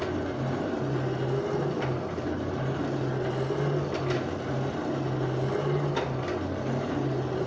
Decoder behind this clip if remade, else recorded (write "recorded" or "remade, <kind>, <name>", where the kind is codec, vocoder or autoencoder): recorded